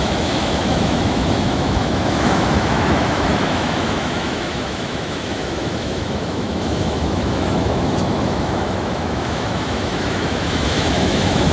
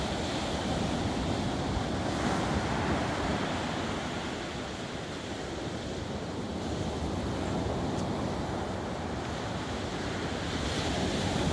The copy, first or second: first